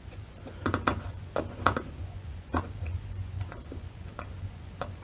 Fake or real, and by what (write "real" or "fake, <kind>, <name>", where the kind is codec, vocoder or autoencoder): fake, vocoder, Vocos